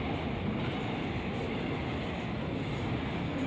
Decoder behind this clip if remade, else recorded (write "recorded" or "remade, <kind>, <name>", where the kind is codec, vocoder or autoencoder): recorded